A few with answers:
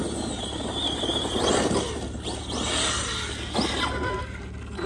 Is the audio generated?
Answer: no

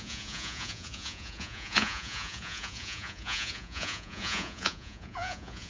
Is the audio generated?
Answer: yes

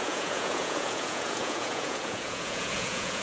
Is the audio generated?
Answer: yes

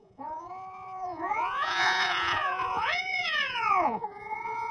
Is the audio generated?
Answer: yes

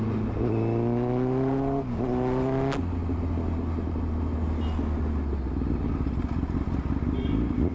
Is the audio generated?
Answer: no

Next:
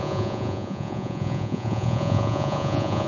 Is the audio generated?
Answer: yes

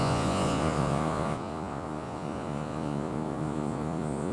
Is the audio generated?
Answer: yes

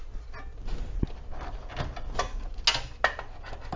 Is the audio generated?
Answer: no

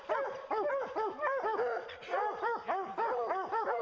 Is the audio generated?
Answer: no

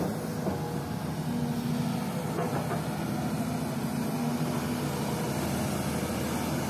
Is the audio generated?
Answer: no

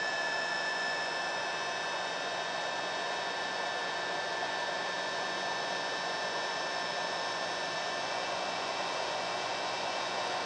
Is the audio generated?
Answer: yes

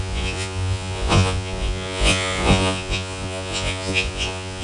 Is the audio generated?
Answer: yes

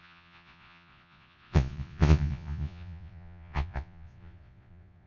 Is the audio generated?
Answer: yes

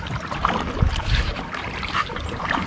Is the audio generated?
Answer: no